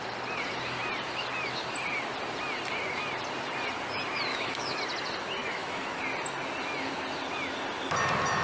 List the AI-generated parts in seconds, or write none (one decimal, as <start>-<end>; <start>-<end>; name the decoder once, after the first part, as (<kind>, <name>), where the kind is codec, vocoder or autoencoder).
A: 4.3-4.8 (autoencoder, DAC-VAE); 5.4-6.0

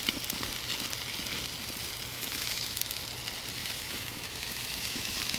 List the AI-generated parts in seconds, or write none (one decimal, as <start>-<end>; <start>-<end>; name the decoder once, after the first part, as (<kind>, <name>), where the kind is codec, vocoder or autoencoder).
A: 2.1-3.0 (autoencoder, DAC-VAE); 3.6-5.4

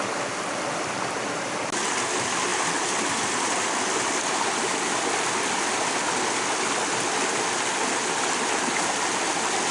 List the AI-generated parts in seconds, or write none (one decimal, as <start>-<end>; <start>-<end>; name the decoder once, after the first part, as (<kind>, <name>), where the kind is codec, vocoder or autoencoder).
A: none